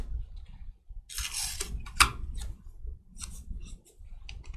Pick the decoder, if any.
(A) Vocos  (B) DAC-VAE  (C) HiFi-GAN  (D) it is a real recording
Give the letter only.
D